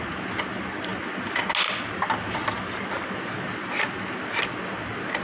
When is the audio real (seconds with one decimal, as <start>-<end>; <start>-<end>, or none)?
0.0-5.2